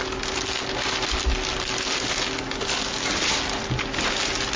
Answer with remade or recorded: recorded